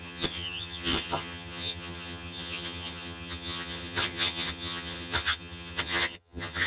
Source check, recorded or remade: remade